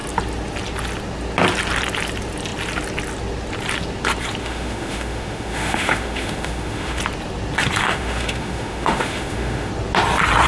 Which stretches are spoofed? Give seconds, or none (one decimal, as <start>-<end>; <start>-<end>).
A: 4.4-7.0; 7.8-9.7